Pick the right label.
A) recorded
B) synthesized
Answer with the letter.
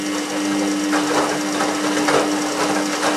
A